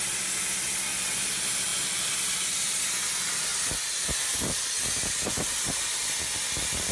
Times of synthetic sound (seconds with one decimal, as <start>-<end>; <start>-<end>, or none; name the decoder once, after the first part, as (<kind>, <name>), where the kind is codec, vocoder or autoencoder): none